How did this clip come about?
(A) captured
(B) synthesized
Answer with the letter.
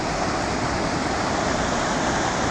A